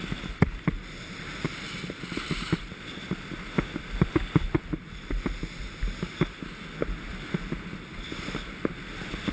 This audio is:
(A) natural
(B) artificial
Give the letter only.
A